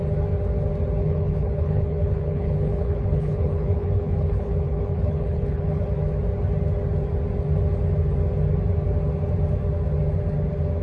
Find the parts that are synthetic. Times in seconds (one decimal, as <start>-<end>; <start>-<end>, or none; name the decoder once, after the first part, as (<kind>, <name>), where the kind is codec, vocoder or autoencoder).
1.0-5.8 (codec, HILCodec)